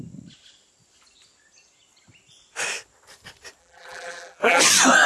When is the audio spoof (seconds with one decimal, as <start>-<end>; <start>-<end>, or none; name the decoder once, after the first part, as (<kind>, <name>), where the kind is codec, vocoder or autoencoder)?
3.6-4.6 (vocoder, BigVGAN v2)